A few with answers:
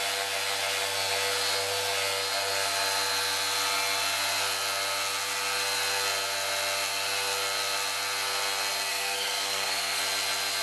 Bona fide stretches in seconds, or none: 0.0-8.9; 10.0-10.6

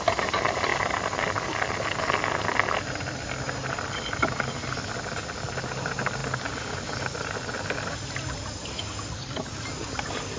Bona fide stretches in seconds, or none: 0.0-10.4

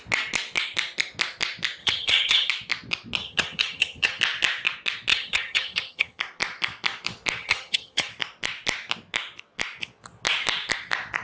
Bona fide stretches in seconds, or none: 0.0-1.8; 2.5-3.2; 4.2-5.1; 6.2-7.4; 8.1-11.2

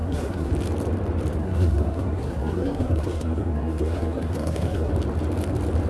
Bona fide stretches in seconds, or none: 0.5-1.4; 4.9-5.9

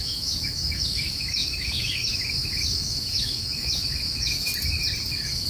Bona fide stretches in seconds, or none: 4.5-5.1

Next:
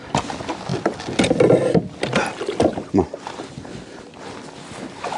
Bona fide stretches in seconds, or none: 0.0-2.7; 3.9-5.2